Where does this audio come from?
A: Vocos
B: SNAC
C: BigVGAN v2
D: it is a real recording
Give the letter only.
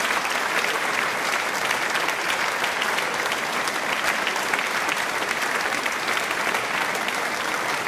D